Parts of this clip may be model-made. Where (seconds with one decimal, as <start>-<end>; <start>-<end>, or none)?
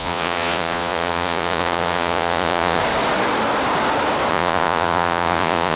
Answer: 0.0-2.8; 4.3-5.8